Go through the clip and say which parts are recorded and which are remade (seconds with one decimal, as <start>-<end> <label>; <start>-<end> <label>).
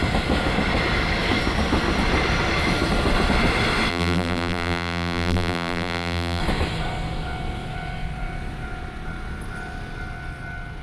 0.0-3.9 recorded; 3.9-6.4 remade; 6.4-10.8 recorded